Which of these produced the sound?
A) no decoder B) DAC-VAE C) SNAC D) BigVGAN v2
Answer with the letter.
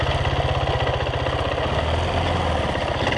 A